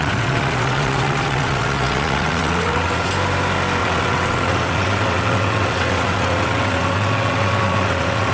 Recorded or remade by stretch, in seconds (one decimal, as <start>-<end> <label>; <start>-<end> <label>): 0.0-3.1 remade; 3.1-3.8 recorded; 3.8-8.3 remade